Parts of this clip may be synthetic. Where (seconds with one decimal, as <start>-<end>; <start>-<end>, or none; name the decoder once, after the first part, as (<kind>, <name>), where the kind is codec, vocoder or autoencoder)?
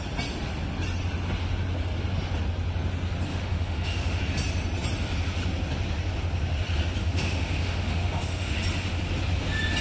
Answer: 3.3-4.2 (autoencoder, DAC-VAE); 7.0-8.5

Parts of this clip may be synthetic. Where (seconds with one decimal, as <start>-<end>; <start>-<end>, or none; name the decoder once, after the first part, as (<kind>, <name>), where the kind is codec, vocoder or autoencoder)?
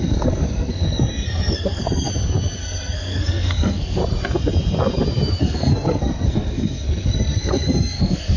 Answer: 0.0-2.1 (codec, SNAC); 2.6-4.0; 5.4-8.4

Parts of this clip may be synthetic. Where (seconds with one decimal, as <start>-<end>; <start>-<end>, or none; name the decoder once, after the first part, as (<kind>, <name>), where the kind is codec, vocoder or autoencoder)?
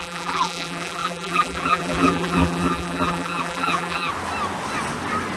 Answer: 0.0-4.1 (vocoder, BigVGAN v2)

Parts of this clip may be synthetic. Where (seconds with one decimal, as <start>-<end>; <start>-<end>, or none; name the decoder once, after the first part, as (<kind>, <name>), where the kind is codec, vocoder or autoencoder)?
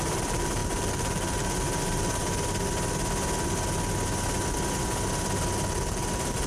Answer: 0.0-2.2 (vocoder, BigVGAN v2); 5.9-6.5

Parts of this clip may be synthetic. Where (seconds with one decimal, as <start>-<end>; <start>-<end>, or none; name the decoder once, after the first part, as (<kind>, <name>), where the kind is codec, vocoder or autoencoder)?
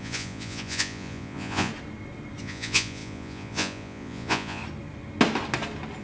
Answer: 0.0-1.7 (vocoder, Vocos); 2.4-4.6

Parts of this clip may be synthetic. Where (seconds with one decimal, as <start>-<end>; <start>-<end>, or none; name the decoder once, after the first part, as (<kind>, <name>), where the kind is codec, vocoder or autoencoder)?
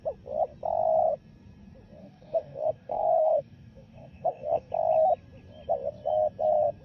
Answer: 2.0-4.7 (codec, DAC)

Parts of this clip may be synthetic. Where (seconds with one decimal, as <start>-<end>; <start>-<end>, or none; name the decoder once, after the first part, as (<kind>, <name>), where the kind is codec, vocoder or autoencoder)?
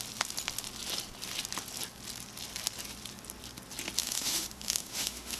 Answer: 4.0-5.4 (autoencoder, DAC-VAE)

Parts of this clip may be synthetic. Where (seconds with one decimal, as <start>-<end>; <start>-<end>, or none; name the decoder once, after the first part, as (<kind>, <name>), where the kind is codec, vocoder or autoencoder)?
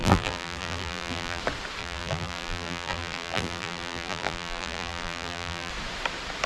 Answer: 0.0-1.4 (vocoder, BigVGAN v2); 1.8-5.7